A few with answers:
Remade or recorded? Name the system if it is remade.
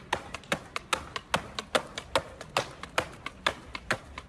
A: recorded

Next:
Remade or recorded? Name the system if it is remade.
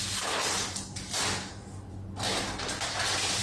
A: recorded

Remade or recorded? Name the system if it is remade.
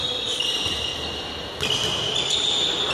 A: recorded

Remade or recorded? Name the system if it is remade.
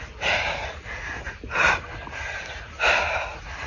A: recorded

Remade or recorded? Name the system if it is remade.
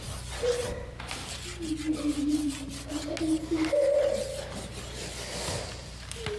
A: recorded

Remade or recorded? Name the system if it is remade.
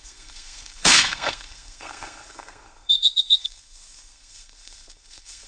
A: remade, codec, SNAC